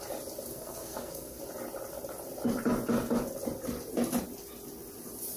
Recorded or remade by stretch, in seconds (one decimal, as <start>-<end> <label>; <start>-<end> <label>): 0.0-0.5 recorded; 0.5-1.4 remade; 1.4-5.4 recorded